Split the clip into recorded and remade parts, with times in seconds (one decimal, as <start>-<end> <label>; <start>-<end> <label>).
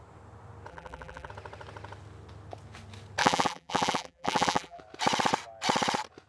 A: 0.0-0.7 recorded; 0.7-1.3 remade; 1.3-3.2 recorded; 3.2-4.8 remade; 4.8-6.3 recorded